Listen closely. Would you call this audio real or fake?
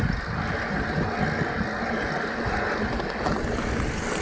real